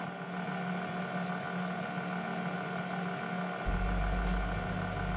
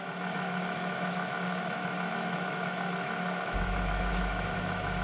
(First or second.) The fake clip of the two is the second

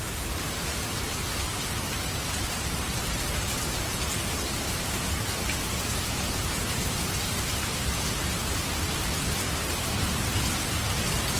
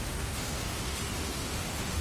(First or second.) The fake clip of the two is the second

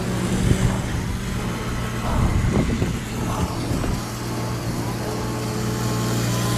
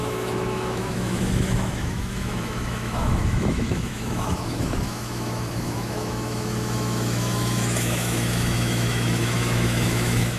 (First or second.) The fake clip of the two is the second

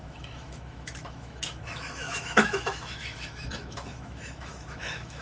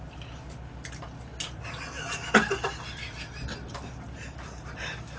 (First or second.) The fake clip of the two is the first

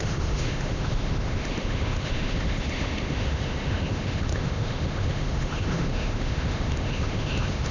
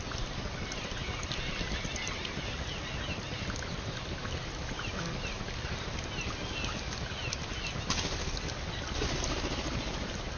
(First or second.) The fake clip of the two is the first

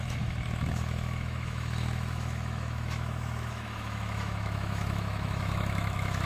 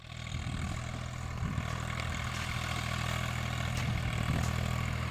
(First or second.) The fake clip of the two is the first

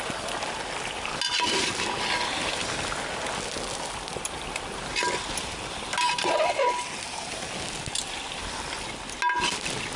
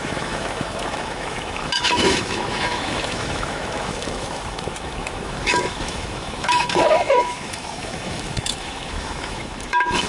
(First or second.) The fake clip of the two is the second